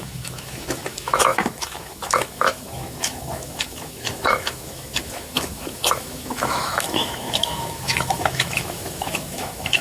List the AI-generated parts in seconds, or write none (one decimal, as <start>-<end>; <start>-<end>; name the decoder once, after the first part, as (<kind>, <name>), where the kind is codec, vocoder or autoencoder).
0.0-9.8 (autoencoder, DAC-VAE)

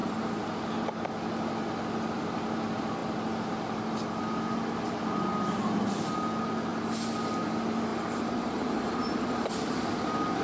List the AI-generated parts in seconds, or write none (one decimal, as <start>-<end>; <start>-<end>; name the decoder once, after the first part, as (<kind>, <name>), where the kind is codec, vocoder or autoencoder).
0.0-0.5 (vocoder, BigVGAN v2); 7.9-9.5

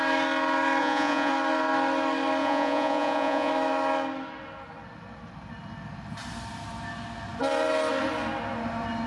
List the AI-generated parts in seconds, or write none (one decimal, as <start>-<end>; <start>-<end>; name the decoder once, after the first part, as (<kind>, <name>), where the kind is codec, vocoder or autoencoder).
0.8-1.3 (vocoder, Vocos); 2.4-3.5

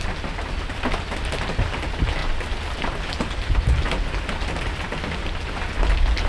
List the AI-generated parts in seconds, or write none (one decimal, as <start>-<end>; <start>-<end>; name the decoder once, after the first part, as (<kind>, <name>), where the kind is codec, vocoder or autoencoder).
none

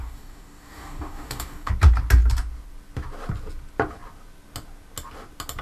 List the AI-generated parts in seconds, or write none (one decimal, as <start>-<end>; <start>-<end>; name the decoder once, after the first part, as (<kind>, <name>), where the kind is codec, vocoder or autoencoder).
0.0-1.7 (codec, DAC)